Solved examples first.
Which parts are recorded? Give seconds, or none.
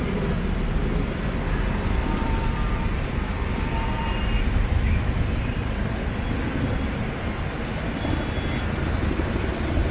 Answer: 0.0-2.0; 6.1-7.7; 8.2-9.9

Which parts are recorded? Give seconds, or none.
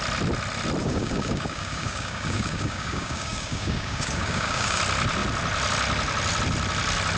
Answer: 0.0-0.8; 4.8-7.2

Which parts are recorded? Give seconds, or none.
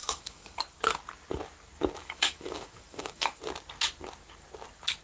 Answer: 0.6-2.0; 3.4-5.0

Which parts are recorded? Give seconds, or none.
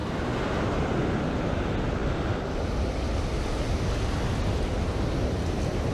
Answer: 0.0-5.9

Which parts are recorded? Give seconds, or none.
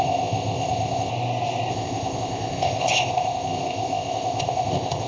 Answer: 1.1-1.7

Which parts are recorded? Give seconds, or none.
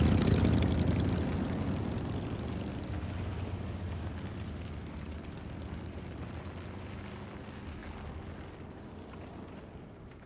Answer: 0.0-10.3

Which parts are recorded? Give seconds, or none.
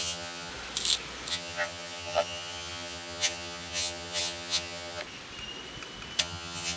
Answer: 0.5-1.3; 5.0-6.2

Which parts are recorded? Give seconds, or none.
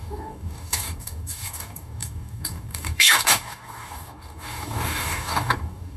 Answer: none